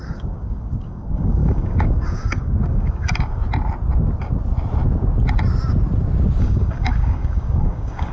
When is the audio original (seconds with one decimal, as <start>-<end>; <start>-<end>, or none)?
3.4-6.4